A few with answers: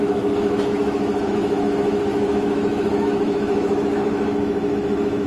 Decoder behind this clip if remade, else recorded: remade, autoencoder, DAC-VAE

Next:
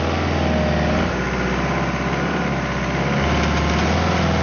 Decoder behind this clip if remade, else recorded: recorded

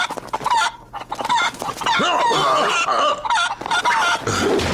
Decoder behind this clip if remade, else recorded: recorded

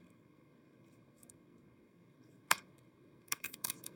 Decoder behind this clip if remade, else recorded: remade, codec, SNAC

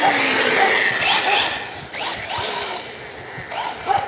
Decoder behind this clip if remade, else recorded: recorded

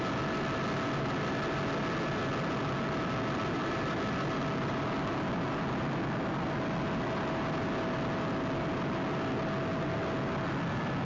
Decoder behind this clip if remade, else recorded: recorded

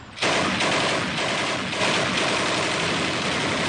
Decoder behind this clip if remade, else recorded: recorded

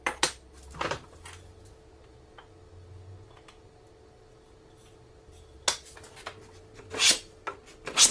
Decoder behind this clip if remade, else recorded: recorded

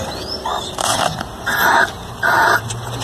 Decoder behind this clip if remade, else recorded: remade, vocoder, BigVGAN v2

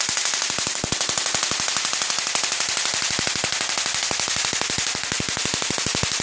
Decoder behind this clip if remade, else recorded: recorded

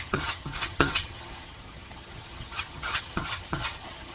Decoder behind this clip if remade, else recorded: remade, vocoder, HiFi-GAN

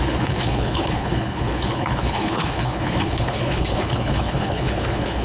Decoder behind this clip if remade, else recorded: remade, codec, HILCodec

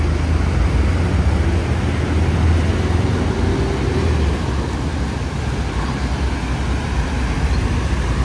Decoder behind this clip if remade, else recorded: recorded